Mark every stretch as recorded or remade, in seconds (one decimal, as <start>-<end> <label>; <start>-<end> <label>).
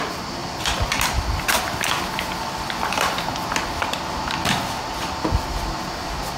0.0-6.4 recorded